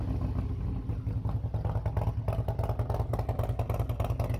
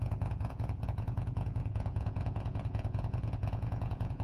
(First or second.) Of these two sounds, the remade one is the second